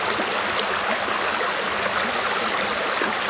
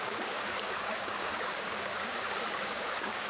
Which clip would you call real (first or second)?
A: first